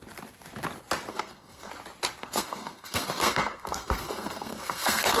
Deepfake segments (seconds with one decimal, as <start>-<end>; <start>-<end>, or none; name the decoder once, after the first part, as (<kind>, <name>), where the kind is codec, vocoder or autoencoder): 1.1-1.7 (codec, SNAC); 2.2-5.2